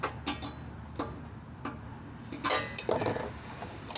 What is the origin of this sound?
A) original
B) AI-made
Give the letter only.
A